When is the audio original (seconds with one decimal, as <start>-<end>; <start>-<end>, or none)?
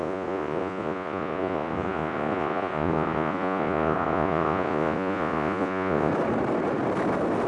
6.1-7.5